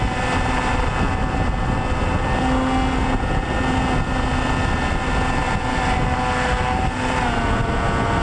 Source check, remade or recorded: recorded